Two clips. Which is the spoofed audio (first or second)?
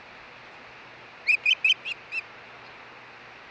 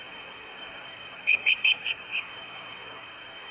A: second